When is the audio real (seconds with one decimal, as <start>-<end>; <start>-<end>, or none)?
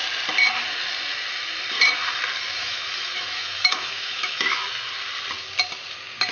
0.0-2.6; 4.8-6.3